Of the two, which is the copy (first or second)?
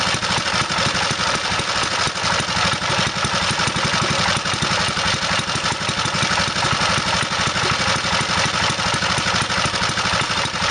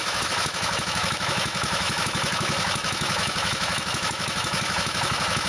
second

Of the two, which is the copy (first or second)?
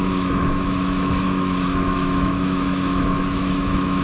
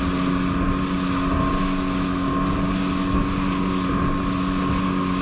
first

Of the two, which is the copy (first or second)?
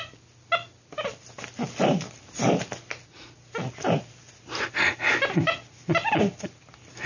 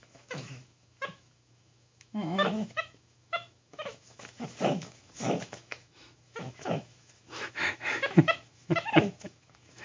second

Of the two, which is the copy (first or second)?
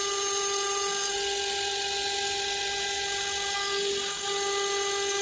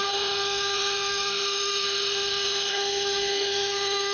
second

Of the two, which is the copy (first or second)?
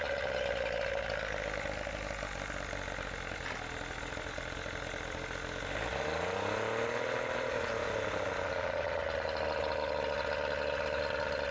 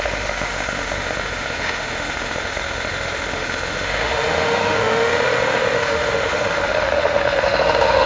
second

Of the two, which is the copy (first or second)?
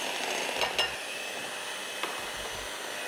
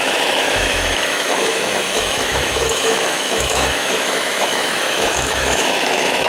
second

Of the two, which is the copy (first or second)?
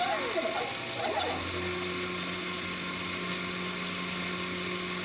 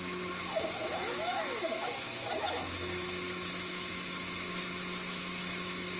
second